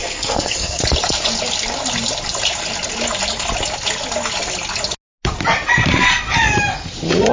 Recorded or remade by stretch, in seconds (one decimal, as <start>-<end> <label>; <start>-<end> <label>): 0.0-0.8 remade; 0.8-7.3 recorded